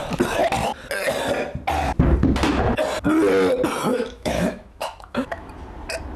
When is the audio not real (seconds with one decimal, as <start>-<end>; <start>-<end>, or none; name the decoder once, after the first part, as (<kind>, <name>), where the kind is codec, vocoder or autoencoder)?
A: 3.9-5.5 (autoencoder, DAC-VAE)